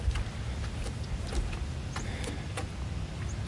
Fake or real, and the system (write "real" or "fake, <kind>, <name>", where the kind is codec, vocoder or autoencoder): real